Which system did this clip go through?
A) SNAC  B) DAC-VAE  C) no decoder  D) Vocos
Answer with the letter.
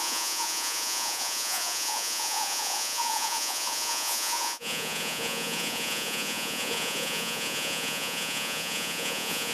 D